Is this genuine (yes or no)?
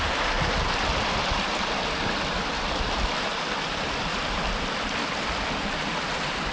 yes